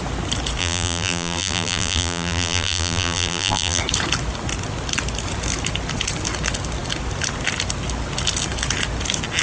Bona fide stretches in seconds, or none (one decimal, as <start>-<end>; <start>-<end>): 0.0-0.6; 3.8-9.4